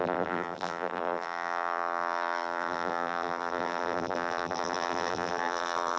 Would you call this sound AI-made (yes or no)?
yes